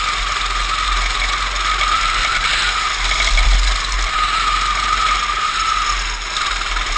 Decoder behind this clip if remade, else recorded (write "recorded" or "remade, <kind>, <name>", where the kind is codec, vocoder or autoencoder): recorded